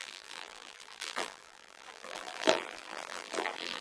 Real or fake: fake